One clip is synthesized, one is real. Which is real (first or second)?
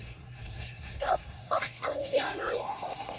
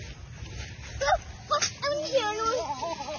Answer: second